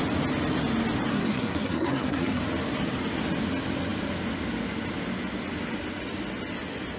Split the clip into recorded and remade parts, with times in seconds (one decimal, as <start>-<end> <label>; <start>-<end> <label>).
0.0-1.1 recorded; 1.1-2.4 remade; 2.4-7.0 recorded